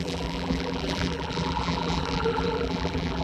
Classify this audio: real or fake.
fake